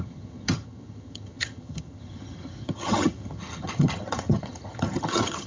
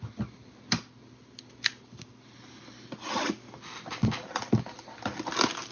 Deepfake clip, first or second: first